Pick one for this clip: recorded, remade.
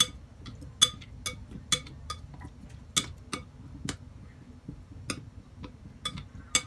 recorded